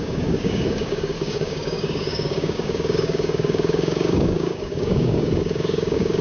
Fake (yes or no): yes